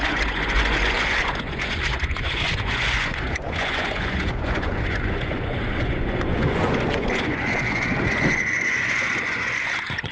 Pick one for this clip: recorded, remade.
remade